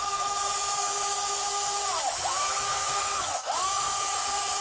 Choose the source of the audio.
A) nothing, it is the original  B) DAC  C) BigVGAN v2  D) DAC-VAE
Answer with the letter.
D